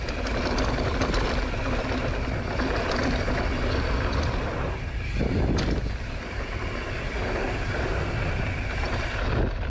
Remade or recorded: recorded